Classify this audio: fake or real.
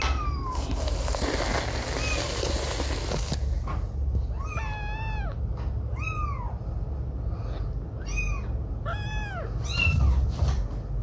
real